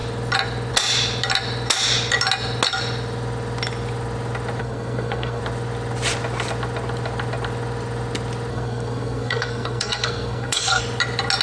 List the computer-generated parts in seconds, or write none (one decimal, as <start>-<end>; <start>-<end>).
4.6-5.4; 8.5-10.8